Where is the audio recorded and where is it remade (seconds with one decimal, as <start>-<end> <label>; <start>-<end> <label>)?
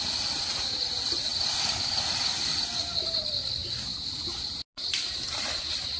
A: 0.0-6.0 recorded